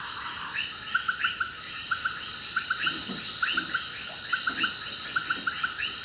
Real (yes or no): yes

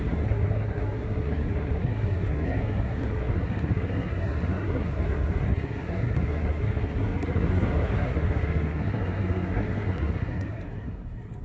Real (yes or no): no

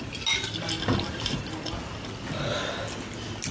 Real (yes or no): yes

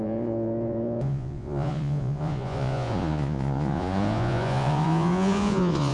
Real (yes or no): no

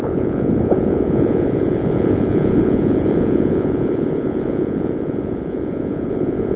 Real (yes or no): no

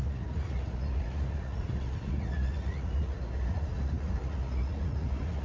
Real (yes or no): no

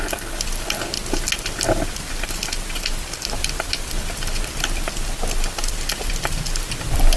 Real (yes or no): yes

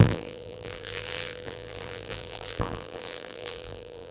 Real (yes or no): no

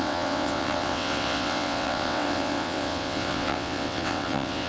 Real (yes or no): no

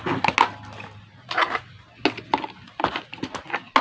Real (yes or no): yes